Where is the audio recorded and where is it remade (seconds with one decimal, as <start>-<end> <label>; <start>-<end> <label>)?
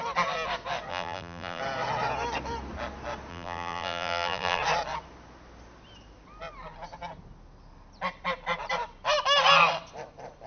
0.0-0.9 recorded; 0.9-1.6 remade; 1.6-3.3 recorded; 3.3-4.6 remade; 4.6-10.5 recorded